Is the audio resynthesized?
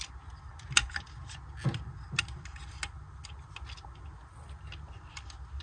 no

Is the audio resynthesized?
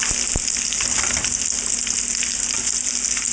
no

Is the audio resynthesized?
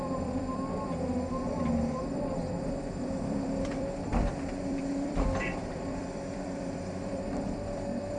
yes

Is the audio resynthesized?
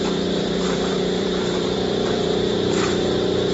yes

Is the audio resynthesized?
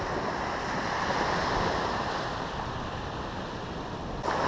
no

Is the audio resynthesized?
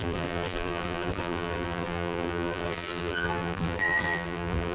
yes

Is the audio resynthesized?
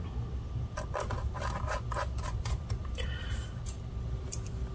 yes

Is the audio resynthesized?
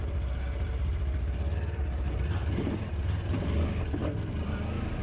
yes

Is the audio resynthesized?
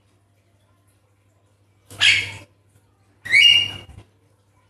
no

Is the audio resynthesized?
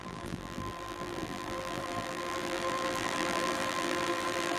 yes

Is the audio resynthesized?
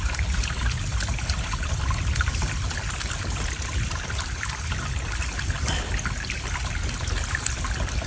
yes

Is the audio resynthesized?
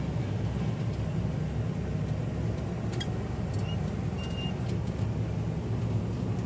no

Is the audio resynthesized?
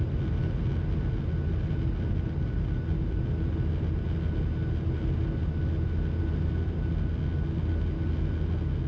no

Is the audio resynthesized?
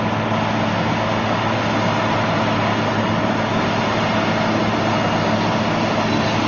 no